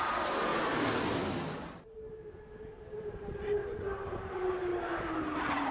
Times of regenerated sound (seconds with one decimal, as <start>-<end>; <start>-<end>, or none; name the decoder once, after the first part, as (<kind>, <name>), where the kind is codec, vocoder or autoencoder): 0.0-0.5 (vocoder, BigVGAN v2); 3.0-4.7